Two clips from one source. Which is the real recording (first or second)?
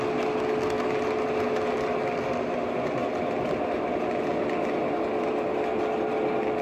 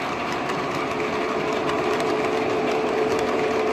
first